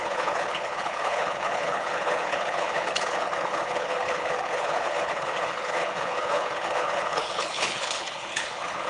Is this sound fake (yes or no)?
yes